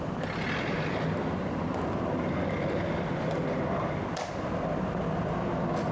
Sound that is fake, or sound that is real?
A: real